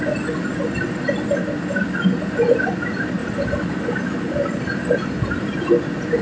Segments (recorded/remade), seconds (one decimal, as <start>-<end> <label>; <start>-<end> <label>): 0.0-3.2 recorded; 3.2-5.6 remade; 5.6-6.2 recorded